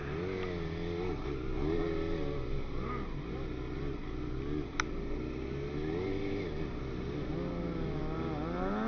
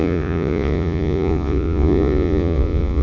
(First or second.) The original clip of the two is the first